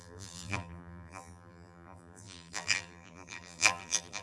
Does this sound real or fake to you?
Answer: fake